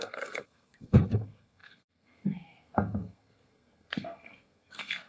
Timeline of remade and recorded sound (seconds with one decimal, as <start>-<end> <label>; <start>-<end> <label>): 0.0-5.1 remade